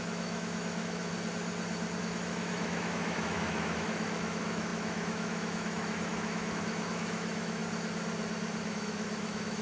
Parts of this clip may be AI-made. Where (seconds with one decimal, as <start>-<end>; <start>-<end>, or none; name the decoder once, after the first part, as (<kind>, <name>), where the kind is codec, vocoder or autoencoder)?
0.0-1.1 (autoencoder, DAC-VAE); 2.0-7.6; 8.7-9.6